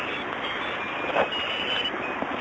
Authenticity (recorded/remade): recorded